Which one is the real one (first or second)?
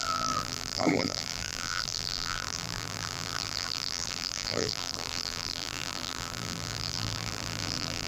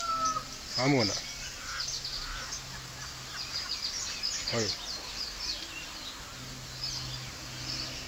second